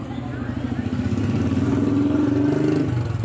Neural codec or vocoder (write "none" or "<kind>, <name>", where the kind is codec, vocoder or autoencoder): none